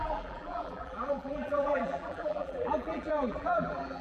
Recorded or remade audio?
remade